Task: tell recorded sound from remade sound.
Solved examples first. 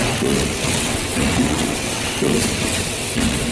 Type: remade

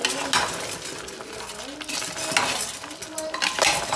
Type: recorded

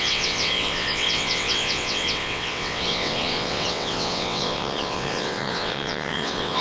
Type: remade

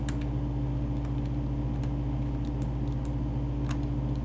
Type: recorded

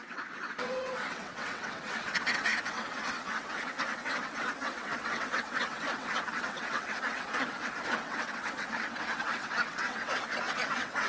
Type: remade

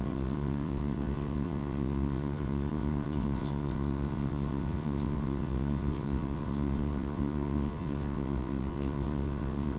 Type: remade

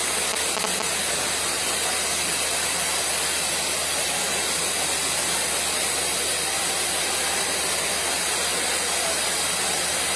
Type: recorded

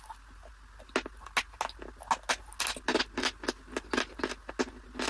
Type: recorded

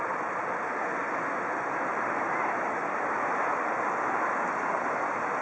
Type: recorded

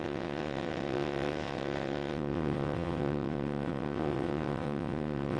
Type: remade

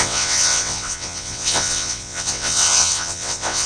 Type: remade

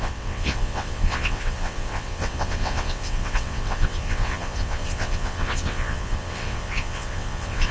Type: remade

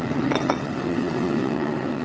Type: remade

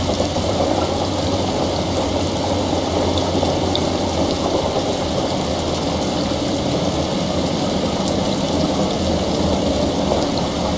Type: recorded